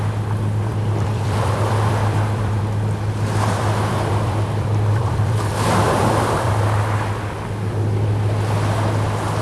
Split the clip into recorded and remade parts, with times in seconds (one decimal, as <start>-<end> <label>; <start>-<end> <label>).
0.0-0.7 recorded; 0.7-2.6 remade; 2.6-3.6 recorded; 3.6-6.5 remade; 6.5-9.4 recorded